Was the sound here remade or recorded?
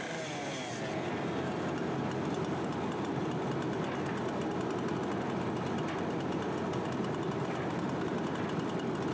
recorded